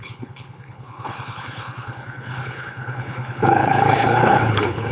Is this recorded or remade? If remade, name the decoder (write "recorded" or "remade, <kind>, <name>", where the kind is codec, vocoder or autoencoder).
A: remade, codec, HILCodec